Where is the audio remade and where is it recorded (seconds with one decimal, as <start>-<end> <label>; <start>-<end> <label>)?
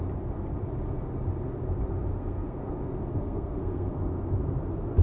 0.0-2.1 recorded; 2.1-2.7 remade; 2.7-3.1 recorded; 3.1-3.9 remade; 3.9-5.0 recorded